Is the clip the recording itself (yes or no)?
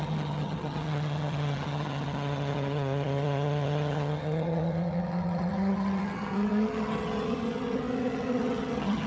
no